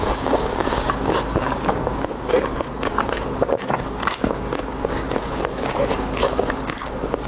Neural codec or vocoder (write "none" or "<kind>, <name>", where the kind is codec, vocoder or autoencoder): codec, DAC